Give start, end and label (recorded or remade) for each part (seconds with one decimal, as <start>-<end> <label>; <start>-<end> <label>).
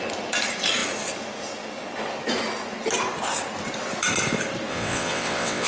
0.0-4.7 recorded; 4.7-5.7 remade